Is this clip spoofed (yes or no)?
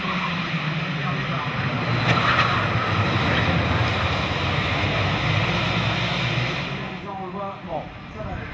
no